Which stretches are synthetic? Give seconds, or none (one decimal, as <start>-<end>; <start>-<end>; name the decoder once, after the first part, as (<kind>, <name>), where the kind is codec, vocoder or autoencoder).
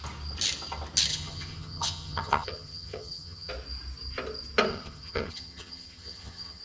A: 1.1-3.5 (vocoder, HiFi-GAN); 4.7-6.6